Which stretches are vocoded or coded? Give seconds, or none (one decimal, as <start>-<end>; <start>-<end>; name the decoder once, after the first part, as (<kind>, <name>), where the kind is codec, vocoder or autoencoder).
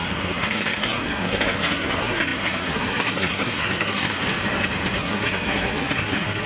0.0-4.2 (codec, SNAC); 5.0-6.5